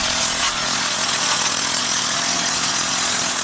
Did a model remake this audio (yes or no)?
yes